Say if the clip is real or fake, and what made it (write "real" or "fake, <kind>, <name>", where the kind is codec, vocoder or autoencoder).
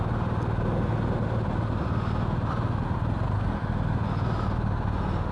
real